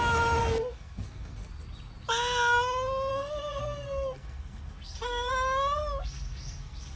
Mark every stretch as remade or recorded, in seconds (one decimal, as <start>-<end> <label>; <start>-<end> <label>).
0.0-0.4 recorded; 0.4-1.5 remade; 1.5-3.1 recorded; 3.1-5.3 remade; 5.3-6.0 recorded; 6.0-7.0 remade